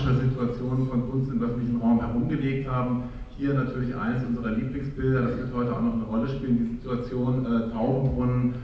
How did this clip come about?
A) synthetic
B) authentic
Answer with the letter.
B